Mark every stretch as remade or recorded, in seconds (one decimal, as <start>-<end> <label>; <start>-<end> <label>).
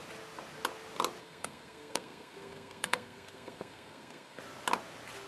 0.0-1.2 recorded; 1.2-4.4 remade; 4.4-5.3 recorded